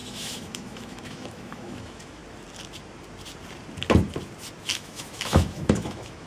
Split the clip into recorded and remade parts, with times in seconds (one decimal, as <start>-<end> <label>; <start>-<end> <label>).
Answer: 0.0-2.2 remade; 2.2-4.6 recorded; 4.6-6.3 remade